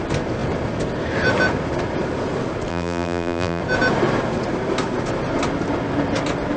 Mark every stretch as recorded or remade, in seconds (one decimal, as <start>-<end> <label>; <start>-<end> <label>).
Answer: 0.0-2.7 recorded; 2.7-3.6 remade; 3.6-6.6 recorded